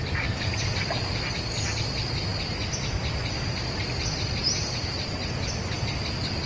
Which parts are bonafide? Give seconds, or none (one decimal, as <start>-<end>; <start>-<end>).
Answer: 0.0-6.5